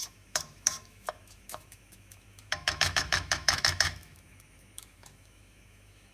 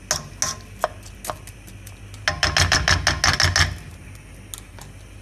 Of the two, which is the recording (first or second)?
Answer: second